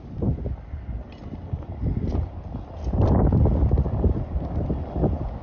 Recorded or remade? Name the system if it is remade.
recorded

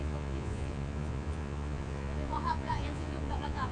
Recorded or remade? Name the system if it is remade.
remade, vocoder, Vocos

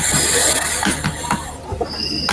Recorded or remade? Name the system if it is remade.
recorded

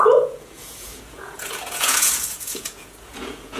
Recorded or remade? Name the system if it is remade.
remade, vocoder, Vocos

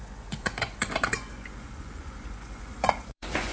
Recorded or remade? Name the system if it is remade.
remade, vocoder, Vocos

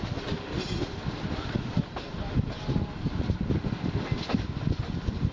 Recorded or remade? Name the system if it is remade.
recorded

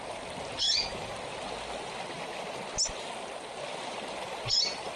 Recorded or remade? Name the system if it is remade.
recorded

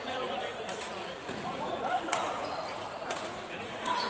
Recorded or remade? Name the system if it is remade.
remade, vocoder, Vocos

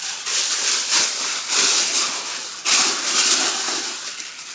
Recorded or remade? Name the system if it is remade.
recorded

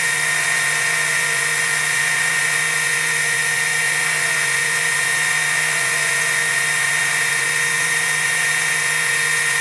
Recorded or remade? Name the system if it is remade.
remade, vocoder, Vocos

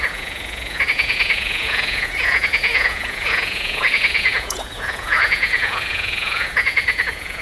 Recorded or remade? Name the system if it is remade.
remade, vocoder, Vocos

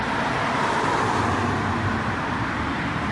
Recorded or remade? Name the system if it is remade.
recorded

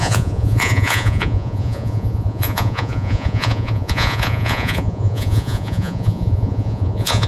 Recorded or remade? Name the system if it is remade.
remade, vocoder, Vocos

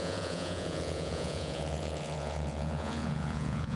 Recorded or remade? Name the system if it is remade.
remade, vocoder, Vocos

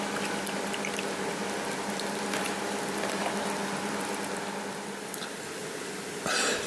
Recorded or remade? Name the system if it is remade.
recorded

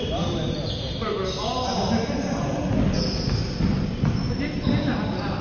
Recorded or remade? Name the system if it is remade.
recorded